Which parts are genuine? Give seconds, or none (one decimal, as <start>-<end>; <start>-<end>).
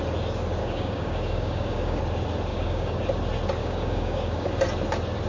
0.0-0.6; 2.0-2.5; 3.0-3.6; 4.5-5.3